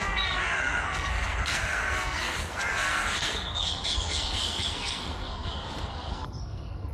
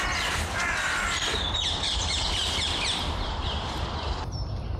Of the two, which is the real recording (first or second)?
second